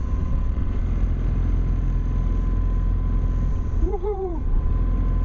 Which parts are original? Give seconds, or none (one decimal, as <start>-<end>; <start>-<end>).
0.8-3.5; 4.7-5.2